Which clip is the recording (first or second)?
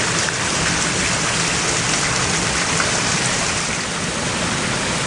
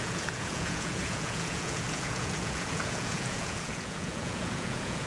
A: first